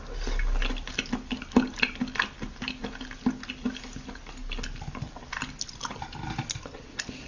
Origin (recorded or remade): recorded